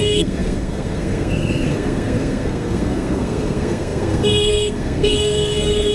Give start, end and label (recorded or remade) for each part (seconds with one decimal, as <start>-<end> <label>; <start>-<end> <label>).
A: 0.0-5.9 remade

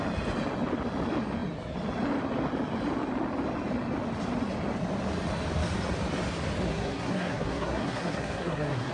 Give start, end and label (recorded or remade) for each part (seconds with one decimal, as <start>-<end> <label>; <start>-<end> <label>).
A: 0.0-6.7 recorded; 6.7-8.9 remade

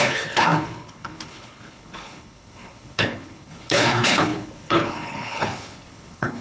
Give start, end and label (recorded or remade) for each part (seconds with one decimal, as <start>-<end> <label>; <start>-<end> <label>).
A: 0.0-6.4 remade